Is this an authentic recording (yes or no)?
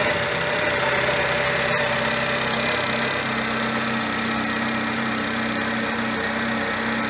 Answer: yes